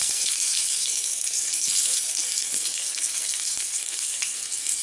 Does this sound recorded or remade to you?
remade